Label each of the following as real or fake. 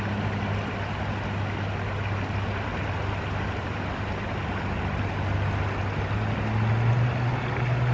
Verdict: real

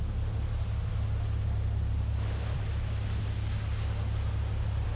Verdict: real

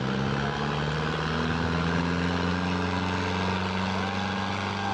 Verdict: real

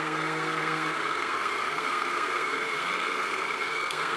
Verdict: fake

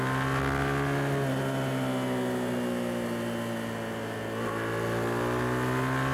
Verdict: real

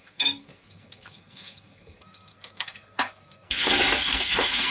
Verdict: fake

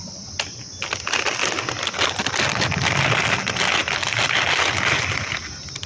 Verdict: real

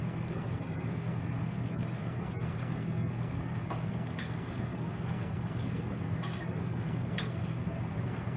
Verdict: fake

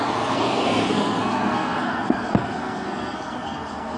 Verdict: fake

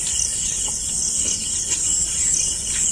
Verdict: real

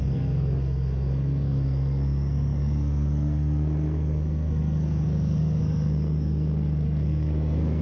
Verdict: fake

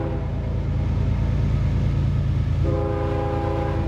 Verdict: real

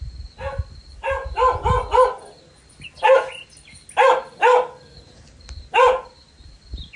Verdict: real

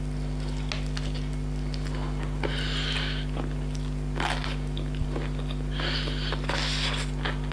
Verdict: real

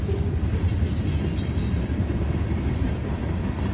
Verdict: real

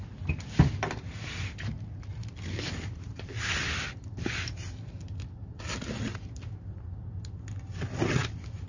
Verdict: real